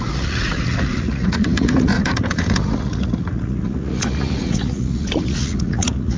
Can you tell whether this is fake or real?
fake